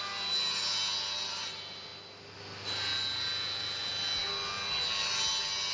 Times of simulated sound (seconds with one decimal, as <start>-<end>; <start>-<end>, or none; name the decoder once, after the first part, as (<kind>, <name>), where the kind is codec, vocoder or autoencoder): none